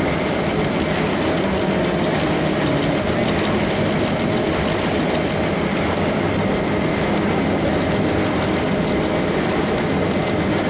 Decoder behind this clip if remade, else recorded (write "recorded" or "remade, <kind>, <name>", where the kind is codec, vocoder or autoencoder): recorded